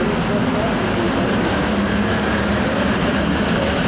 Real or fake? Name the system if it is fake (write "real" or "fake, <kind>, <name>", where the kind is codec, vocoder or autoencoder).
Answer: real